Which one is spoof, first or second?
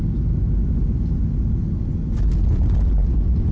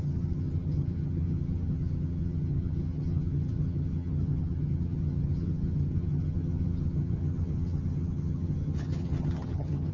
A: second